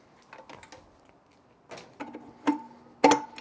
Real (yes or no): yes